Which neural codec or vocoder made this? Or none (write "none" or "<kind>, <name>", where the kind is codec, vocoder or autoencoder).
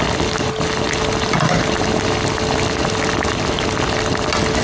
none